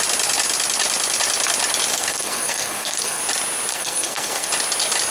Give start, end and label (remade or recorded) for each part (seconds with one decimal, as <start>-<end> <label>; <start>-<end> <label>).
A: 0.0-1.9 recorded; 1.9-3.2 remade; 3.2-3.7 recorded; 3.7-4.5 remade; 4.5-5.1 recorded